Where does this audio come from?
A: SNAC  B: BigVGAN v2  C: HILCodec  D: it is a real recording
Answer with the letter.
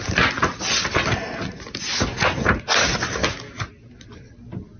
D